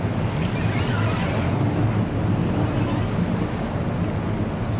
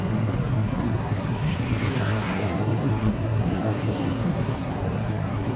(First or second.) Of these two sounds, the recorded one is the first